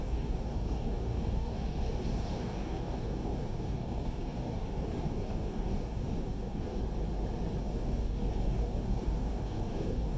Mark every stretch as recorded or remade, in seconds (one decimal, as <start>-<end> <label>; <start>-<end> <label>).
0.0-6.8 remade; 6.8-7.6 recorded; 7.6-10.2 remade